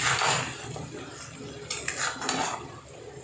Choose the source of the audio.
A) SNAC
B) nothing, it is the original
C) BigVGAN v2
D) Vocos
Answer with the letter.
B